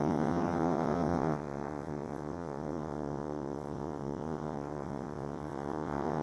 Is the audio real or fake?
fake